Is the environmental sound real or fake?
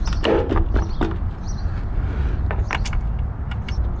real